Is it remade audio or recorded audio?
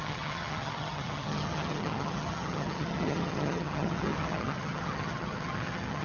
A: remade